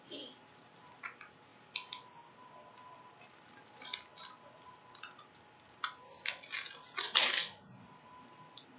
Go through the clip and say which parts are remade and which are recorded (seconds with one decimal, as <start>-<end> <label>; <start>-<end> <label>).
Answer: 0.0-8.8 recorded